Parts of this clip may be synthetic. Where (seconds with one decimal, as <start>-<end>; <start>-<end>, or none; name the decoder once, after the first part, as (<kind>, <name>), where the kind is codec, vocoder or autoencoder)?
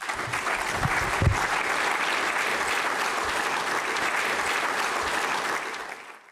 1.3-5.1 (vocoder, BigVGAN v2)